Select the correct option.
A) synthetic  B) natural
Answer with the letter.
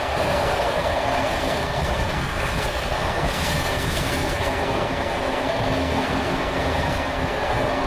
A